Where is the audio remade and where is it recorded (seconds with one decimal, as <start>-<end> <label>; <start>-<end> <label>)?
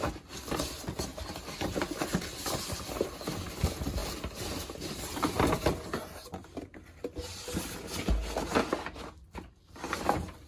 0.0-10.5 recorded